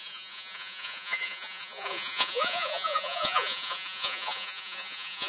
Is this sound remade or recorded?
remade